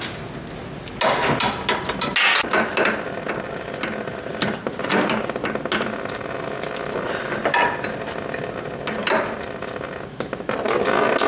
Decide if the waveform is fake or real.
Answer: real